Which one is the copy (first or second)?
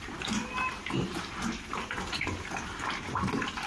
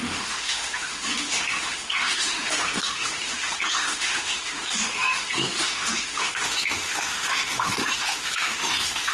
second